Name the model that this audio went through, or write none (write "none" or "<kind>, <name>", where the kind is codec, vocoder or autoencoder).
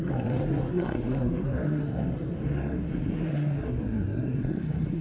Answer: codec, SNAC